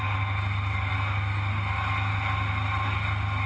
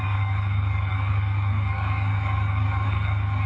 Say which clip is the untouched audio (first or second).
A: first